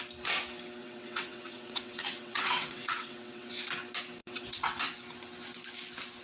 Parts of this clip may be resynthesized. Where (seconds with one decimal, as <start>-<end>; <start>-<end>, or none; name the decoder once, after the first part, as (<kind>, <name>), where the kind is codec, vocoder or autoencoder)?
0.8-3.5 (vocoder, WaveNeXt); 4.2-4.8